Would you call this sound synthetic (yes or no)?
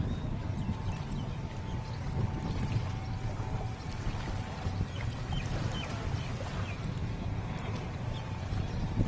no